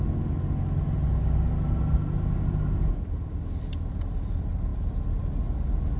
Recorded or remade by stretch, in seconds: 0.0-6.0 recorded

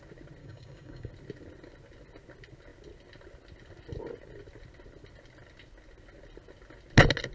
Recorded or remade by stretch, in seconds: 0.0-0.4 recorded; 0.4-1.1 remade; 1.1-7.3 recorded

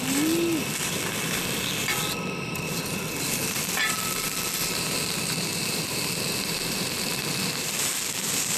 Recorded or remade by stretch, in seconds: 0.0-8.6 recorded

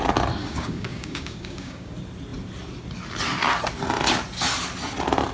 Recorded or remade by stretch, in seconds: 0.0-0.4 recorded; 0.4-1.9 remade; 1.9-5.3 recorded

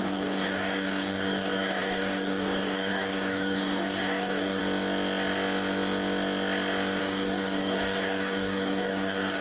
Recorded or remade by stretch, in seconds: 0.0-4.6 remade; 4.6-7.0 recorded; 7.0-9.4 remade

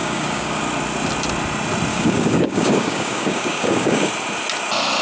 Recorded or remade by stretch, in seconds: 0.0-0.6 remade; 0.6-1.9 recorded; 1.9-4.1 remade; 4.1-5.0 recorded

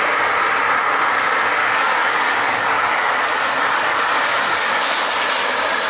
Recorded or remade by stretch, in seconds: 0.0-1.6 recorded; 1.6-5.1 remade; 5.1-5.9 recorded

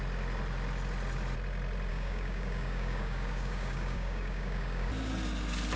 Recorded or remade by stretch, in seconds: 0.0-1.9 recorded; 1.9-4.9 remade; 4.9-5.8 recorded